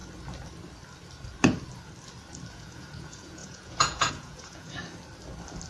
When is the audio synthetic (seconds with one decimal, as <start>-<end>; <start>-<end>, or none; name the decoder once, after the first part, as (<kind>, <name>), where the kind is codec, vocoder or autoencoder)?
2.5-4.8 (vocoder, Vocos)